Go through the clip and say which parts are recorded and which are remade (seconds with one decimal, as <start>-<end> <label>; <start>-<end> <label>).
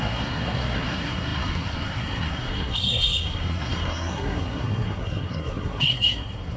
0.0-6.6 remade